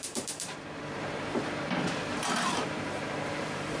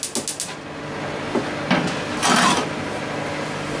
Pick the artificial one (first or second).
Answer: first